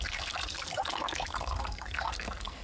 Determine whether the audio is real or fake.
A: fake